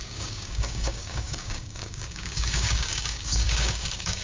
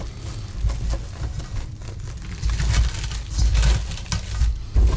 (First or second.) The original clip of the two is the second